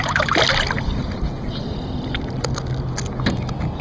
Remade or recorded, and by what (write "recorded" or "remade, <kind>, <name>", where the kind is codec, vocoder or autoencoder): recorded